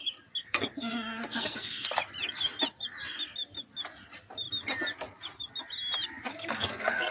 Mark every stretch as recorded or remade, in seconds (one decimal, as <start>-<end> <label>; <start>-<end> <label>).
0.0-0.4 recorded; 0.4-1.9 remade; 1.9-6.3 recorded; 6.3-7.1 remade